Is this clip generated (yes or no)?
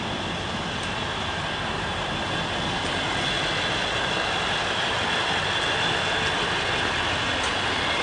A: no